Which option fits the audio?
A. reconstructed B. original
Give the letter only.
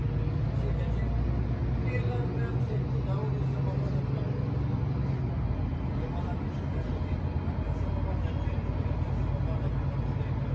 B